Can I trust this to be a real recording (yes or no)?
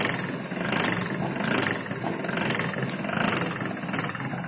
yes